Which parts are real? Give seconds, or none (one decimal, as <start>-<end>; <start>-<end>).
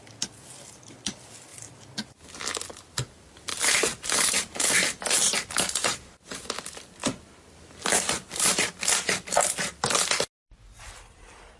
0.0-3.5; 5.5-11.6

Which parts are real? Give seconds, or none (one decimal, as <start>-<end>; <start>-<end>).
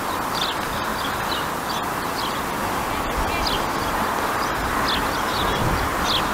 0.0-6.3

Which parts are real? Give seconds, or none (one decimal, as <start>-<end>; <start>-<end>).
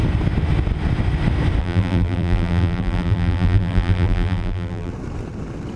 0.0-1.6; 4.9-5.8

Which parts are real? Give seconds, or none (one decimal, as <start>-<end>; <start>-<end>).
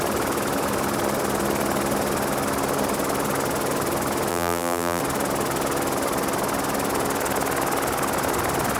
0.0-4.3; 5.0-8.8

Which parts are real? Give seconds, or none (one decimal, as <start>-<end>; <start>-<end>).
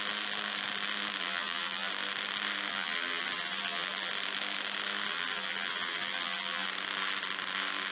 0.0-1.2; 1.9-2.7; 4.1-5.1; 6.7-7.9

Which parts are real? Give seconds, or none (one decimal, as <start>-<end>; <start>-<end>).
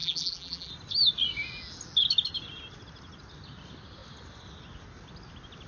0.7-5.7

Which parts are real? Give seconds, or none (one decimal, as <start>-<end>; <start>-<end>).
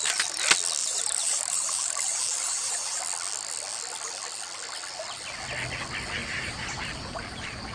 0.0-0.8; 3.0-6.2; 6.8-7.7